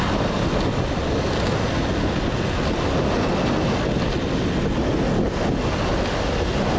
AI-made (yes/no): no